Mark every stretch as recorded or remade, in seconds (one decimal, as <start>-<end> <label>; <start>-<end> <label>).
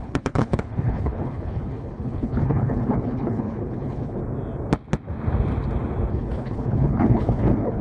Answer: 0.0-4.2 remade; 4.2-6.1 recorded; 6.1-7.8 remade